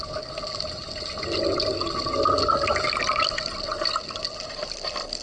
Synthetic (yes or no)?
no